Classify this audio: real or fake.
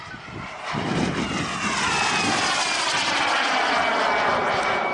real